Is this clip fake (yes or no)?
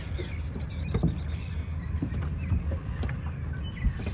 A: no